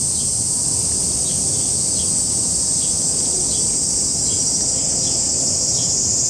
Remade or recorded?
recorded